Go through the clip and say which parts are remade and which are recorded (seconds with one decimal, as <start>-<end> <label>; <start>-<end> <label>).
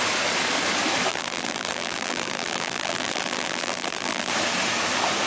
0.0-1.1 recorded; 1.1-4.3 remade; 4.3-5.3 recorded